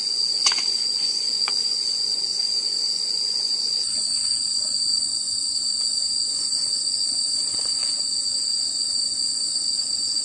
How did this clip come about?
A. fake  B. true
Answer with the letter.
A